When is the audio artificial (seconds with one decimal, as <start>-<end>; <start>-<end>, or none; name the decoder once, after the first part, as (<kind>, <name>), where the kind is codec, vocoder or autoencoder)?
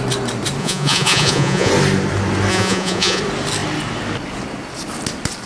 0.6-1.7 (vocoder, Vocos); 2.5-3.2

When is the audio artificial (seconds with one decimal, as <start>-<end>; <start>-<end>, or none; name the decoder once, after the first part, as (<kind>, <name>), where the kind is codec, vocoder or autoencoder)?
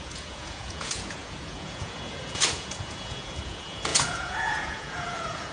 0.0-5.5 (vocoder, Vocos)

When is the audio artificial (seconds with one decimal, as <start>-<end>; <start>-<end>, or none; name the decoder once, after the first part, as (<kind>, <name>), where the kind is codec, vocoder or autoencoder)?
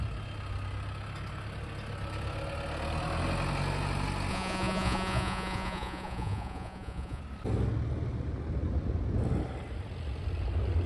4.3-7.2 (vocoder, Vocos)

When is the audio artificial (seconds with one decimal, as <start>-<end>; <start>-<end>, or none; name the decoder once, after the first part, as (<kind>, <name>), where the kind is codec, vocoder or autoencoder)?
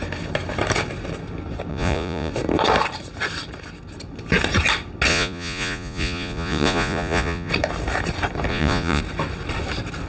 1.7-2.3 (vocoder, Vocos); 5.1-7.5; 8.5-9.0